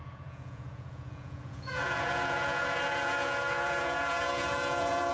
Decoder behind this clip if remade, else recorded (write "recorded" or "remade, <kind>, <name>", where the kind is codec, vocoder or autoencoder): remade, vocoder, Vocos